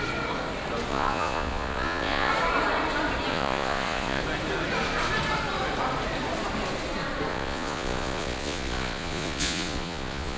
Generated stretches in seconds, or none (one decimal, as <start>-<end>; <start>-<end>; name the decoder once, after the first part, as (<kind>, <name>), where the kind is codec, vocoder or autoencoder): 0.9-2.3 (vocoder, Vocos); 3.3-4.2; 7.3-10.4